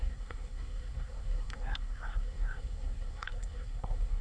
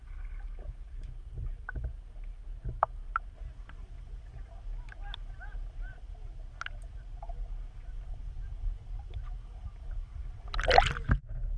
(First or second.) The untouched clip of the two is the second